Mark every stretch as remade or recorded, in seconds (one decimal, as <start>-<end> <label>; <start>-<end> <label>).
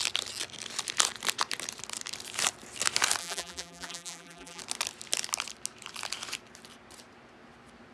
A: 0.0-3.2 recorded; 3.2-4.6 remade; 4.6-7.9 recorded